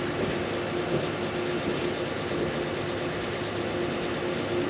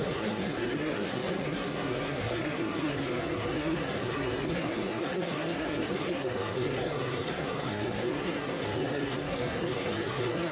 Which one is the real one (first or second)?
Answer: first